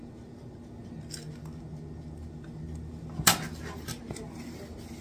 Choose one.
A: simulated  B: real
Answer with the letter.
B